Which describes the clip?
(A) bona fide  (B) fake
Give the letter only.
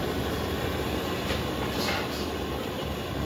A